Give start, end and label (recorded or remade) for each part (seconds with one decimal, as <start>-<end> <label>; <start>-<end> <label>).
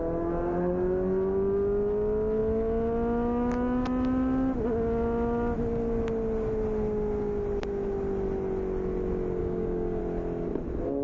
0.0-9.4 recorded; 9.4-10.0 remade; 10.0-11.0 recorded